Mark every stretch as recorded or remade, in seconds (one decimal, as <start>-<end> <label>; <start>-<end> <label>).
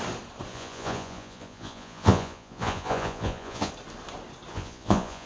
0.0-0.5 recorded; 0.5-3.7 remade; 3.7-4.5 recorded; 4.5-5.3 remade